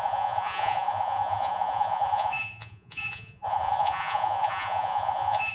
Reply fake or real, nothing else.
fake